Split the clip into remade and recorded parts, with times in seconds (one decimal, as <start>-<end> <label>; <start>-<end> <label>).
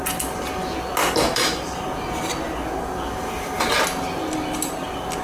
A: 0.0-5.2 recorded